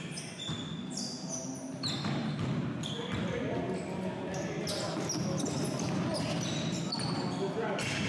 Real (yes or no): yes